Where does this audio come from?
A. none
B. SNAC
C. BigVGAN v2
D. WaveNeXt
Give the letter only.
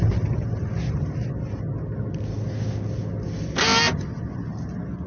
A